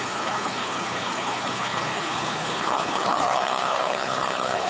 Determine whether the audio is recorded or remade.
remade